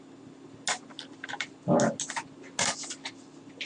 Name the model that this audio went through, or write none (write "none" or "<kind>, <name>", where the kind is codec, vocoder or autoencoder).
none